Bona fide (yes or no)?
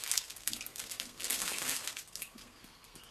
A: no